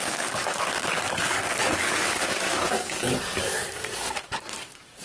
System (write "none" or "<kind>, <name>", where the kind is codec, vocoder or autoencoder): codec, DAC